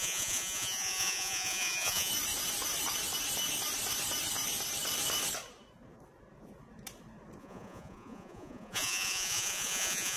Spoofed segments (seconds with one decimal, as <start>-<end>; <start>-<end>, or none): 0.0-2.1; 7.4-10.2